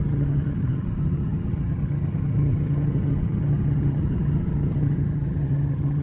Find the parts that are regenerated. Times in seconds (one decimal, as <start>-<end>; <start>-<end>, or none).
0.0-6.0